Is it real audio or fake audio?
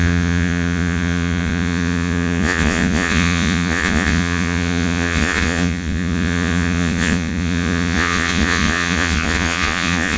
fake